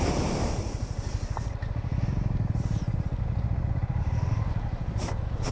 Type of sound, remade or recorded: recorded